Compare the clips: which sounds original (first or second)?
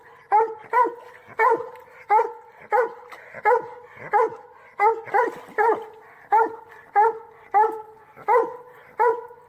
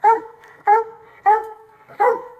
first